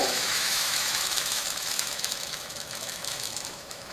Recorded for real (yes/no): no